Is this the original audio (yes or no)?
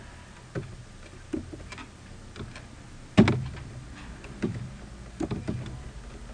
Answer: yes